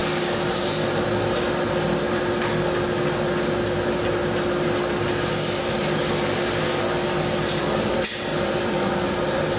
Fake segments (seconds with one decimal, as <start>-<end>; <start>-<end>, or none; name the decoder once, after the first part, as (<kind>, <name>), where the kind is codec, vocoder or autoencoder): none